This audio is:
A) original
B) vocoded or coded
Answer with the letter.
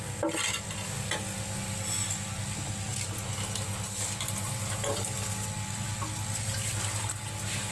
A